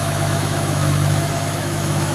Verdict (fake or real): fake